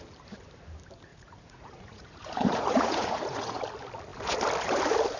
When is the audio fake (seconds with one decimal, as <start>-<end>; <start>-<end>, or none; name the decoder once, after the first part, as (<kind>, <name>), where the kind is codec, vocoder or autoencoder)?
1.1-3.6 (vocoder, Vocos)